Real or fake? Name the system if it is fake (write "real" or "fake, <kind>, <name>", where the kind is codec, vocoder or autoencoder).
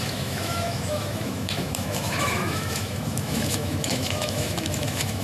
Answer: fake, autoencoder, DAC-VAE